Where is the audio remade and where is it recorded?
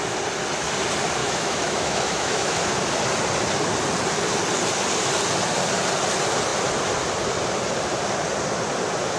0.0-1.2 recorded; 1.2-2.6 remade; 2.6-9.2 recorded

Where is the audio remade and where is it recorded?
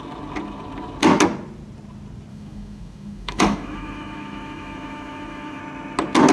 0.0-2.3 recorded; 2.3-5.6 remade; 5.6-6.3 recorded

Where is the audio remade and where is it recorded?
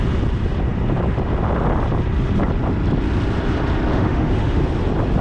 0.0-3.9 recorded; 3.9-4.6 remade; 4.6-5.2 recorded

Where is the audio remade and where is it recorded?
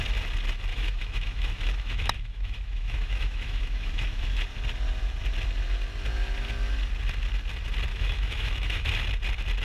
0.0-0.7 recorded; 0.7-4.4 remade; 4.4-7.9 recorded; 7.9-8.9 remade; 8.9-9.6 recorded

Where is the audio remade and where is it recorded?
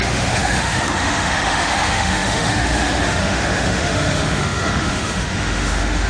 0.0-6.1 remade